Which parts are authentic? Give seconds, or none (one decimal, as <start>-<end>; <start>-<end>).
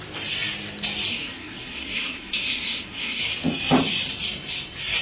0.0-1.1; 3.2-5.0